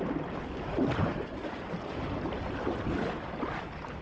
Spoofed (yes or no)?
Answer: no